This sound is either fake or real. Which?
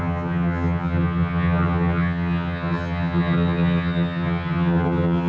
fake